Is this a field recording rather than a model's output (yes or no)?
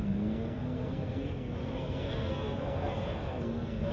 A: no